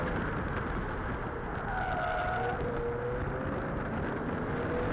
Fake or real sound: real